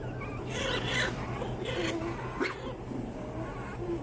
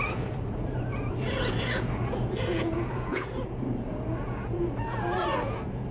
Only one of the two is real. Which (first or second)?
first